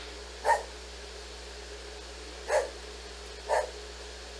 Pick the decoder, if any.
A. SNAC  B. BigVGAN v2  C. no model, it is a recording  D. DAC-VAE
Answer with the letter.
C